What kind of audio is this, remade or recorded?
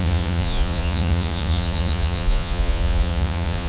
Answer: remade